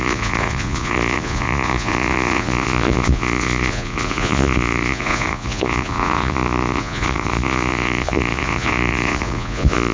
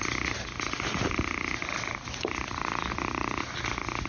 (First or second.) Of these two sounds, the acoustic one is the second